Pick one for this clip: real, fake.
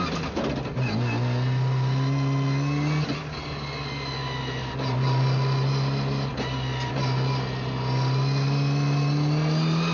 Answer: real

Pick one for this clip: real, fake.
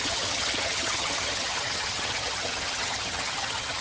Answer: fake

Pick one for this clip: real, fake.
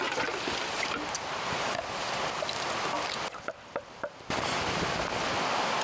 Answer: real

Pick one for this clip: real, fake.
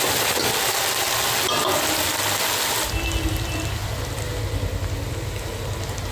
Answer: real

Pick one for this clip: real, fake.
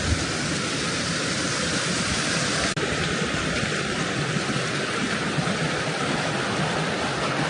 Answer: real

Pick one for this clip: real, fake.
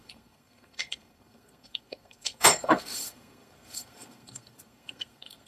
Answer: fake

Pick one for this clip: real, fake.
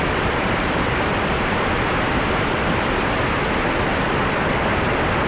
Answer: fake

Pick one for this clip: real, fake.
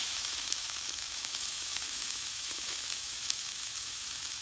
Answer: fake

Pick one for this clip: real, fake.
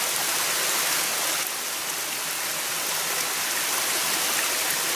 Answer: real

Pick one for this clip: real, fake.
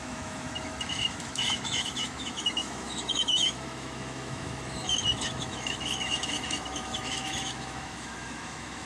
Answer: fake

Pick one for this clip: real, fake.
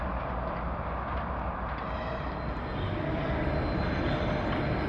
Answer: real